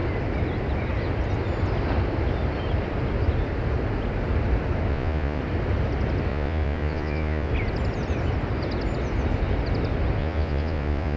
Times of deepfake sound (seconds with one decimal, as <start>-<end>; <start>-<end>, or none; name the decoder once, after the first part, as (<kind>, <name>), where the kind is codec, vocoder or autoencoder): 4.9-5.4 (vocoder, Vocos); 6.3-7.5; 10.2-11.2